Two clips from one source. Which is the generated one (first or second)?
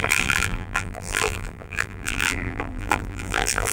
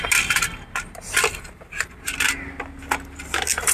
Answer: first